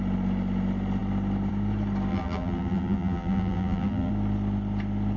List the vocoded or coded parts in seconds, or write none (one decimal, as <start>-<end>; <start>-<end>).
2.1-4.1